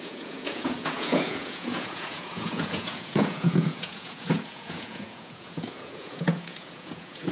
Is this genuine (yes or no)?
no